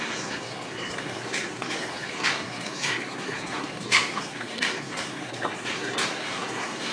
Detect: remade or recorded remade